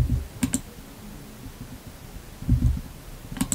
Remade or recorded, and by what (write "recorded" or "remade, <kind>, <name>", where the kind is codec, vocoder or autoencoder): recorded